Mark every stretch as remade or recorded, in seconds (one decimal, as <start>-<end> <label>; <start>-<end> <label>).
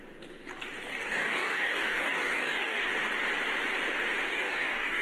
0.0-0.9 recorded; 0.9-2.9 remade; 2.9-4.3 recorded; 4.3-5.0 remade